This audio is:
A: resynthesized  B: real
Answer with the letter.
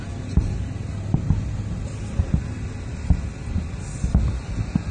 B